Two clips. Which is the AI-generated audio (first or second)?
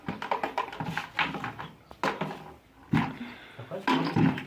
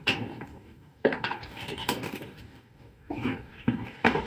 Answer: second